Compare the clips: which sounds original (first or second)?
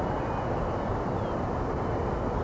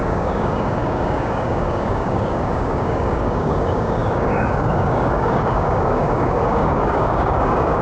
first